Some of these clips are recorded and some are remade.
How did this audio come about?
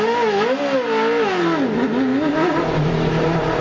recorded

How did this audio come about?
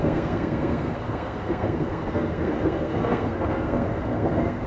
remade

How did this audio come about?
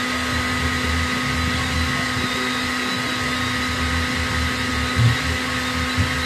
recorded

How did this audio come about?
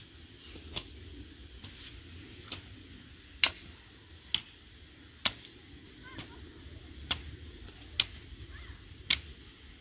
recorded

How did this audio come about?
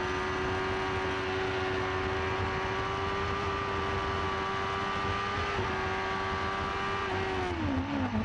recorded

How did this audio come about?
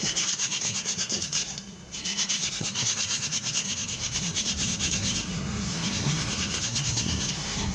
remade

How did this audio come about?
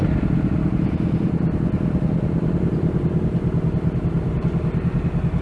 recorded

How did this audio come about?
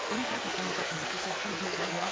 remade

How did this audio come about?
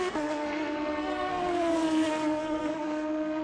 remade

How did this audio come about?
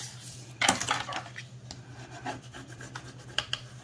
recorded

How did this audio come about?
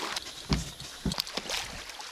recorded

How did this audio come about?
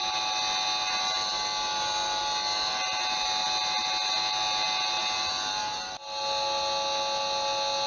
recorded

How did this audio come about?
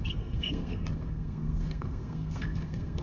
remade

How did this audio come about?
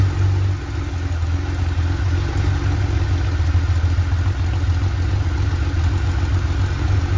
recorded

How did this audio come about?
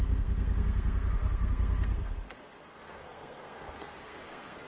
remade